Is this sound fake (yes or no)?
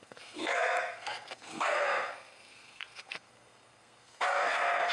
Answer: yes